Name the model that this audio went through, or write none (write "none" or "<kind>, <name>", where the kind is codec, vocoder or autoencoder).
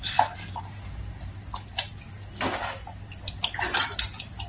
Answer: none